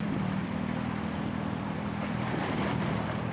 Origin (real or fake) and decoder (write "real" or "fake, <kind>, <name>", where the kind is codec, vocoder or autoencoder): fake, vocoder, BigVGAN v2